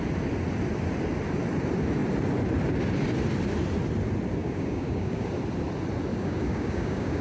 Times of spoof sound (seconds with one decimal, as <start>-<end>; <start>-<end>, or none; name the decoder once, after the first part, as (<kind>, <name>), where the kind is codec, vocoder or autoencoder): 4.4-5.3 (codec, DAC); 6.1-7.2